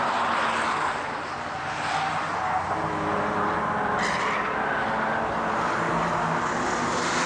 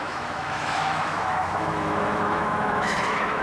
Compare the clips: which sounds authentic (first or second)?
first